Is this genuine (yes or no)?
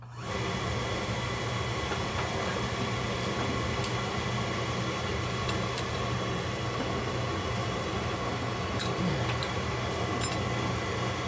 yes